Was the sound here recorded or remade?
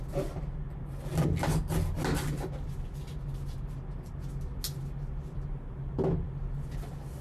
recorded